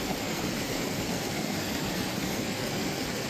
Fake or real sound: fake